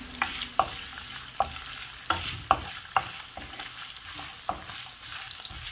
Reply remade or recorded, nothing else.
recorded